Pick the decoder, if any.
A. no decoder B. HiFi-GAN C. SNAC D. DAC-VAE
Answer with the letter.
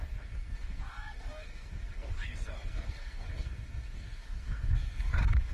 C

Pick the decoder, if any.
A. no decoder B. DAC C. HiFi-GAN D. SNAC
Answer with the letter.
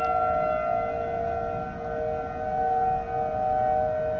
A